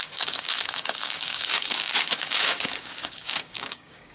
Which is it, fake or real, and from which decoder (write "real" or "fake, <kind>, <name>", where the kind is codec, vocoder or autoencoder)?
fake, codec, DAC